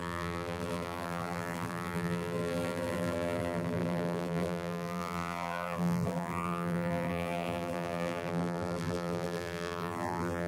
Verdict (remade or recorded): remade